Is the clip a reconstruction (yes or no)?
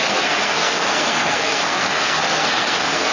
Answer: yes